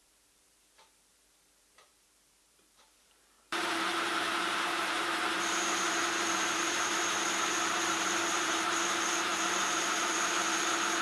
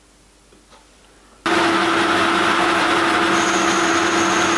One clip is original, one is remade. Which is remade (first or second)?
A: first